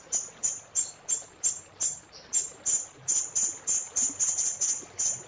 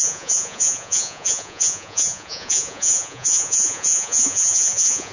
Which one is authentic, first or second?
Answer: first